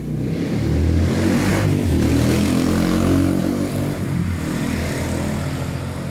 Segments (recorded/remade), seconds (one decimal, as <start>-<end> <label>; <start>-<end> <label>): 0.0-1.5 recorded; 1.5-2.1 remade; 2.1-3.4 recorded; 3.4-4.6 remade; 4.6-6.1 recorded